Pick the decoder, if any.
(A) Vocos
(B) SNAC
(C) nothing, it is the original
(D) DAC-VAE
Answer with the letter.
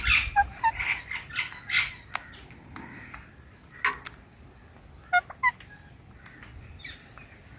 C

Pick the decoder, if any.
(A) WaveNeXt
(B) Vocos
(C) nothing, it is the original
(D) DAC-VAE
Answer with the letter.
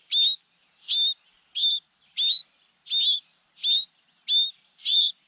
C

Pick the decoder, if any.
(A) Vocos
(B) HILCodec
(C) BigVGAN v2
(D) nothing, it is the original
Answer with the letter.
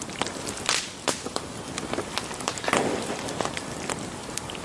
D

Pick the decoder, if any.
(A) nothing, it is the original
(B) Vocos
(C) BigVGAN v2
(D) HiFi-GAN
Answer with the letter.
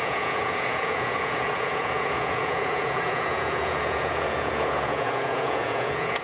B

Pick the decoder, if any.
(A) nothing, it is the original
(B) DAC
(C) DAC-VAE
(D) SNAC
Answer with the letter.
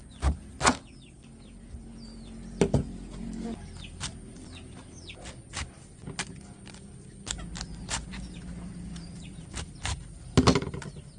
A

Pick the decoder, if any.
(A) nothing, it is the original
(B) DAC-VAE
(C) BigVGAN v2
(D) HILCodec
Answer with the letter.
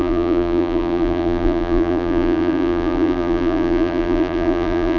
C